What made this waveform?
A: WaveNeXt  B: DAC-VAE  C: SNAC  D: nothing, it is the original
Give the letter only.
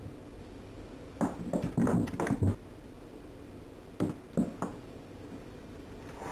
D